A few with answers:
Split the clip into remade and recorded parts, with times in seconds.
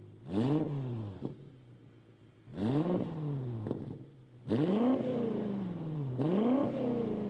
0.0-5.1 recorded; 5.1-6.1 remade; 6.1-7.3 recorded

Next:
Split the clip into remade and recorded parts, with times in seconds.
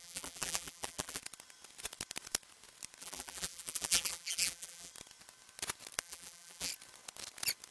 0.0-1.2 remade; 1.2-3.0 recorded; 3.0-4.9 remade; 4.9-6.0 recorded; 6.0-6.7 remade; 6.7-7.7 recorded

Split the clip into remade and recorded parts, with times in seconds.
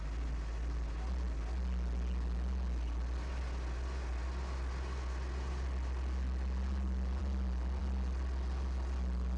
0.0-9.4 recorded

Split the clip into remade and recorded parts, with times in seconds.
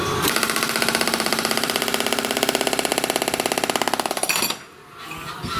0.0-2.9 remade; 2.9-4.1 recorded; 4.1-5.6 remade